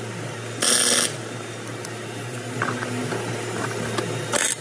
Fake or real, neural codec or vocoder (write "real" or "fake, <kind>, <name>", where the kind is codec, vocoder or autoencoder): real